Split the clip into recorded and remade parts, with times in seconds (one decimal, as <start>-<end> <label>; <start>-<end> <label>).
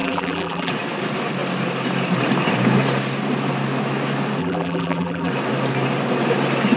0.0-0.7 remade; 0.7-4.4 recorded; 4.4-5.3 remade; 5.3-6.8 recorded